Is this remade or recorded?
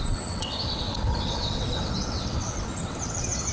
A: remade